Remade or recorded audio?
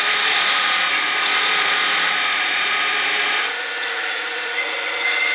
remade